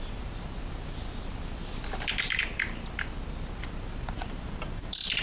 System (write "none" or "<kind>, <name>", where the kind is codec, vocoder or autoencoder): vocoder, BigVGAN v2